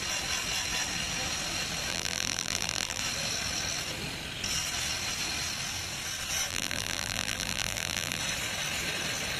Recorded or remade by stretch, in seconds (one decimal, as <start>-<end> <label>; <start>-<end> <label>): 0.0-1.9 recorded; 1.9-3.0 remade; 3.0-6.5 recorded; 6.5-8.2 remade; 8.2-9.4 recorded